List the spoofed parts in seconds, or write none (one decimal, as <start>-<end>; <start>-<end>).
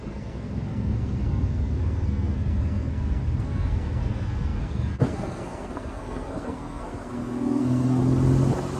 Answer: 0.0-8.0